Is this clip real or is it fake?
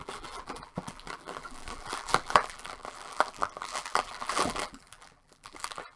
fake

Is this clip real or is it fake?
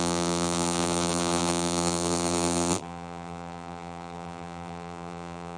fake